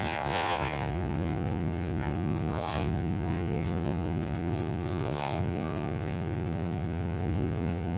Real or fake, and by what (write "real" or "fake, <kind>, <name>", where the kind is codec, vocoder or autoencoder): fake, vocoder, Vocos